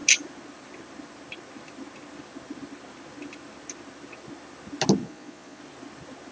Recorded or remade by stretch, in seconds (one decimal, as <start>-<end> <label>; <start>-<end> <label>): 0.0-5.0 recorded; 5.0-5.6 remade; 5.6-6.3 recorded